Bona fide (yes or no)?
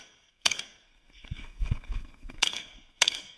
no